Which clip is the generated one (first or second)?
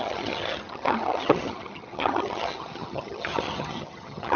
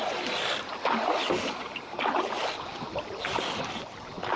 first